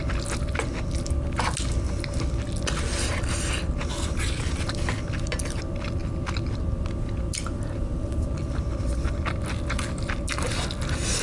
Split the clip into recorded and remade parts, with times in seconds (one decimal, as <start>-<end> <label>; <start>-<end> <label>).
0.0-11.2 recorded